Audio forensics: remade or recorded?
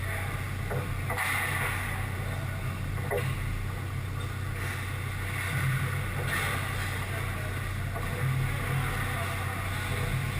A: recorded